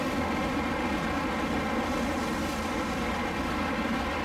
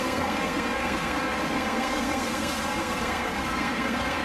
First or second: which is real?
first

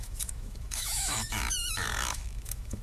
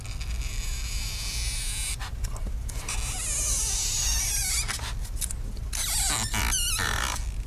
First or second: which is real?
second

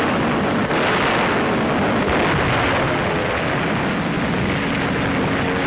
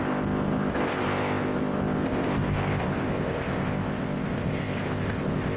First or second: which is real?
first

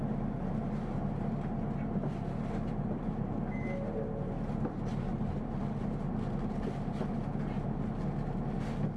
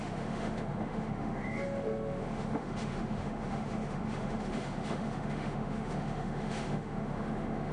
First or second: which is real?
first